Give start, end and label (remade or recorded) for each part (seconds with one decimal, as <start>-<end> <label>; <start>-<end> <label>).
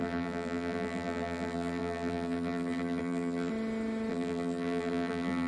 0.0-3.5 remade; 3.5-4.1 recorded; 4.1-5.5 remade